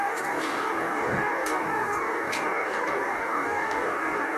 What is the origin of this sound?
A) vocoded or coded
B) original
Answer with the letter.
A